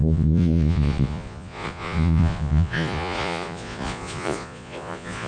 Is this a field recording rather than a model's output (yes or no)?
no